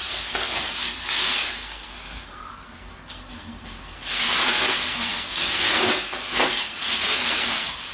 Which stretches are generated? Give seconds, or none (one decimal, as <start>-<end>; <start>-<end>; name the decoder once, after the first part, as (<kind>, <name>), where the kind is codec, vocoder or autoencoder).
0.0-7.9 (codec, SNAC)